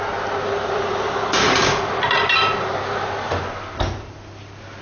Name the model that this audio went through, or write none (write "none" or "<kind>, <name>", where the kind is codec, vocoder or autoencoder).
none